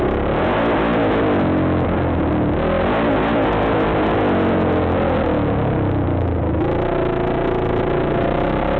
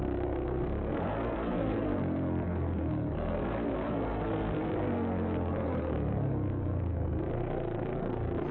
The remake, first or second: second